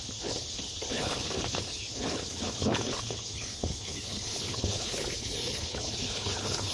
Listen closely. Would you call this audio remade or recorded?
remade